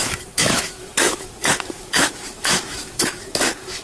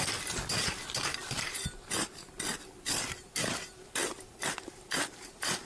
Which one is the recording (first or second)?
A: second